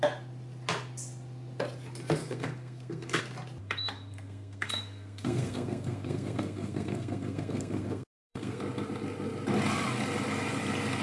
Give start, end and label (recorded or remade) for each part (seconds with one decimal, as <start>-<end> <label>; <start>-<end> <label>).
0.0-2.2 recorded; 2.2-3.2 remade; 3.2-3.6 recorded; 3.6-8.6 remade; 8.6-11.0 recorded